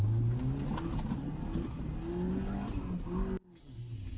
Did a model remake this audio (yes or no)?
no